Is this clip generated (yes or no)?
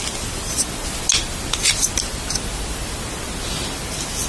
no